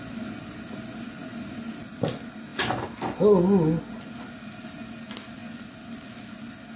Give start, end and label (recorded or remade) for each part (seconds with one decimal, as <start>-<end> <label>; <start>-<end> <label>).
0.0-6.8 recorded